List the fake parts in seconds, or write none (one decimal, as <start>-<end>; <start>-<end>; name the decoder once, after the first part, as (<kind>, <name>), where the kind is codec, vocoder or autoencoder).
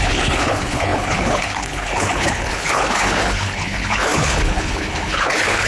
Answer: 0.0-5.7 (codec, HILCodec)